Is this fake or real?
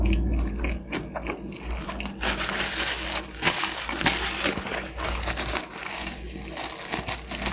real